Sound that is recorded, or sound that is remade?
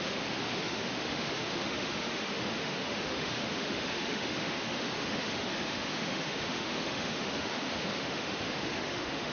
remade